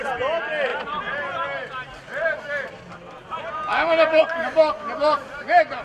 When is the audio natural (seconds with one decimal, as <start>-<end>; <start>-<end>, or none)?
0.0-5.8